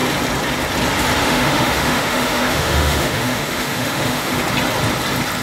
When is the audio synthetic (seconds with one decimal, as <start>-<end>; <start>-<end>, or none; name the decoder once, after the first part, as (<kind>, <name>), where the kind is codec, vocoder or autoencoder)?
1.2-4.4 (autoencoder, DAC-VAE)